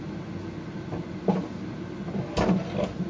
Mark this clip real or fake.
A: real